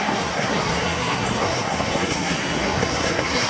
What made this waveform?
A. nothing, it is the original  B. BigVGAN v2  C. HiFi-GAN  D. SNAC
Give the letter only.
D